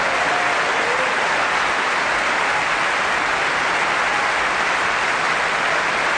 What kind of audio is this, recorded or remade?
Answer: recorded